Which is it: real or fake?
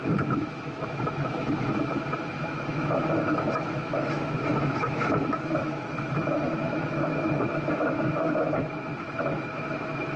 fake